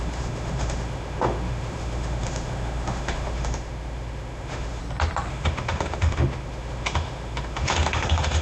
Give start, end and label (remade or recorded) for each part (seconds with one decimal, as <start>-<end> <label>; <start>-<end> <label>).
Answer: 0.0-4.8 remade; 4.8-5.3 recorded; 5.3-8.4 remade